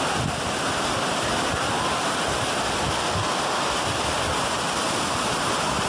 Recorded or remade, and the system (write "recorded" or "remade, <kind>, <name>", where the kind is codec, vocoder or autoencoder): recorded